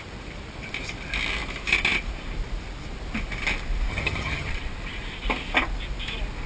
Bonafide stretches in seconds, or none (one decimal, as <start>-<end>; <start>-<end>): 0.0-3.9; 4.5-6.5